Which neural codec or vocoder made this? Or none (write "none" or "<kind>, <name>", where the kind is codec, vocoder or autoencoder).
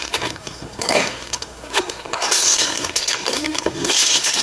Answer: codec, SNAC